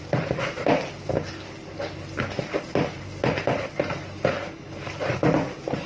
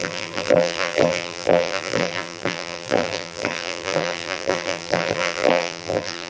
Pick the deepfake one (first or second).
second